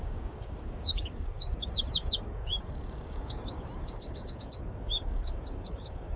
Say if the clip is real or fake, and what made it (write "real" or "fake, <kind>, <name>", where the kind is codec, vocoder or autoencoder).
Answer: fake, codec, DAC